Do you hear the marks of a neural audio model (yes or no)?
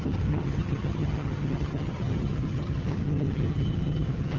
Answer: yes